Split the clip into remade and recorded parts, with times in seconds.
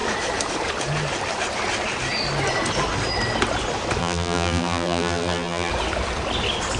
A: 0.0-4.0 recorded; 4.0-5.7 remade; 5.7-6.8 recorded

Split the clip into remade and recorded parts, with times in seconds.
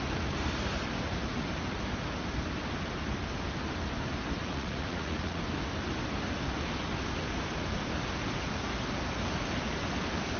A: 0.0-4.4 recorded; 4.4-5.4 remade; 5.4-10.4 recorded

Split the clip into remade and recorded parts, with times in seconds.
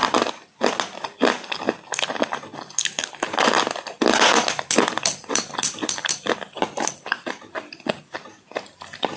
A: 0.0-9.2 recorded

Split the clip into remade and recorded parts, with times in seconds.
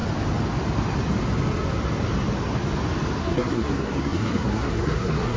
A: 0.0-3.2 recorded; 3.2-5.4 remade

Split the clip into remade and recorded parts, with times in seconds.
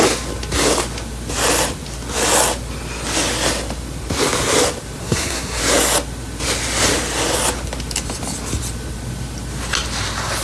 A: 0.0-5.0 recorded; 5.0-5.6 remade; 5.6-10.4 recorded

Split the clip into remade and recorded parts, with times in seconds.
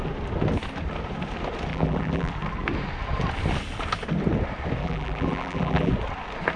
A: 0.0-1.7 recorded; 1.7-2.3 remade; 2.3-4.8 recorded; 4.8-5.9 remade; 5.9-6.6 recorded